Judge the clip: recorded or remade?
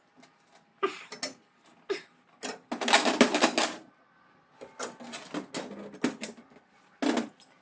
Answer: recorded